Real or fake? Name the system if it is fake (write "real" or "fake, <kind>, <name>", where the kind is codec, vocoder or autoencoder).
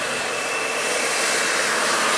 real